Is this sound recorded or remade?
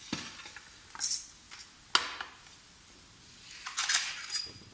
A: recorded